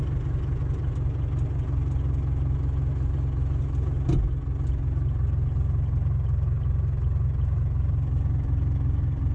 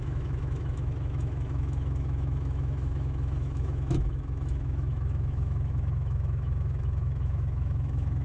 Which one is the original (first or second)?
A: first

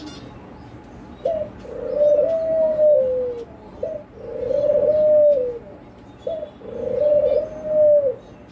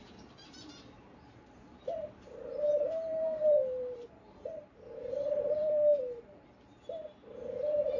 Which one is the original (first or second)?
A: first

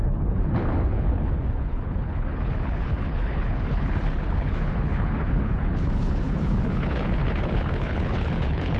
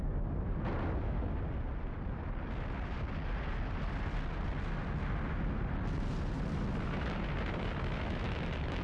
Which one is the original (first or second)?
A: second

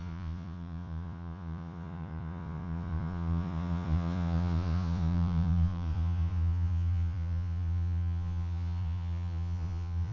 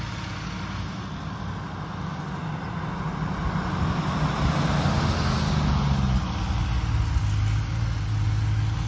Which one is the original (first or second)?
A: second